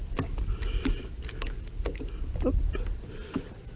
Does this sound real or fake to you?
real